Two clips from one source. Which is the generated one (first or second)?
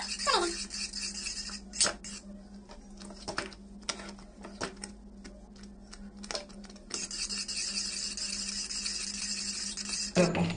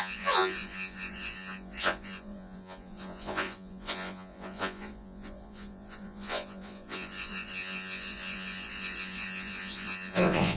second